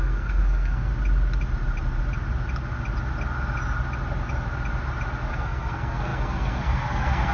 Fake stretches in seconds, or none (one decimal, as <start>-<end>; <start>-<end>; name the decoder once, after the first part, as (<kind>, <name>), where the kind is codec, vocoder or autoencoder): 0.0-0.9 (codec, SNAC); 5.3-7.3

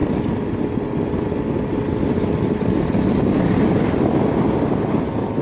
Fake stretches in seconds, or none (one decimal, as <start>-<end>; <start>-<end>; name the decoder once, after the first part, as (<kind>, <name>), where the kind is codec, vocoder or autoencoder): none

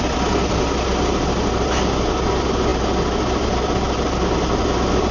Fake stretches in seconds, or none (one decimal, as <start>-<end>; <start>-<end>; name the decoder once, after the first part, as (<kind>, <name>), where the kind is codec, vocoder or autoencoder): none

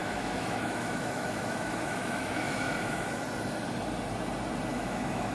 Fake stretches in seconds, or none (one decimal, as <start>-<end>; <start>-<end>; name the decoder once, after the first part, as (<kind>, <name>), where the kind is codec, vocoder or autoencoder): 0.0-3.2 (autoencoder, DAC-VAE); 4.7-5.3

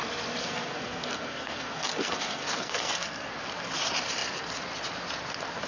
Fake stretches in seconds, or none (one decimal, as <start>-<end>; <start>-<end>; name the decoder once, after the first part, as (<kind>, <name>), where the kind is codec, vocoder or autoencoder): 0.4-3.3 (codec, SNAC)

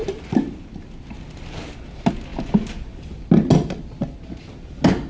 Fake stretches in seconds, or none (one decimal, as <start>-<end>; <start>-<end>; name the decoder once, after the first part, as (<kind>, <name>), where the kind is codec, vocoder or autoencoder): 0.0-0.6 (vocoder, BigVGAN v2)

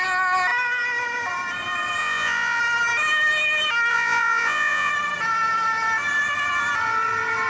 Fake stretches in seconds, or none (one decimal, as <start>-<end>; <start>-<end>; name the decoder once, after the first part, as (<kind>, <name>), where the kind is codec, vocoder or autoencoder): 2.0-2.6 (vocoder, Vocos); 3.9-4.9

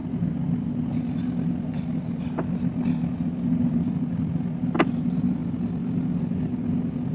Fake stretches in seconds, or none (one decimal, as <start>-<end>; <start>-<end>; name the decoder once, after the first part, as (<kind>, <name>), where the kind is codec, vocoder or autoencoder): none